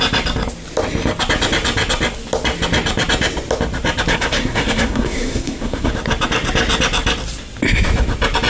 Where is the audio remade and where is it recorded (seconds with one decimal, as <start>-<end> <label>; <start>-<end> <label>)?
0.0-4.1 recorded; 4.1-5.9 remade; 5.9-8.5 recorded